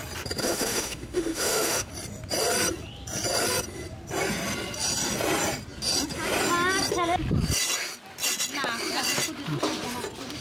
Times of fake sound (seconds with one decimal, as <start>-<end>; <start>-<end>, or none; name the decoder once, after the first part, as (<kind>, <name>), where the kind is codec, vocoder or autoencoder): 0.4-1.9 (autoencoder, DAC-VAE)